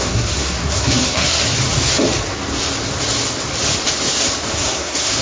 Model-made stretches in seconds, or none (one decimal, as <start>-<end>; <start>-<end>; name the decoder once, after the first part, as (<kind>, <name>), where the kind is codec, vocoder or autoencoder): 0.0-1.4 (codec, SNAC); 4.5-5.2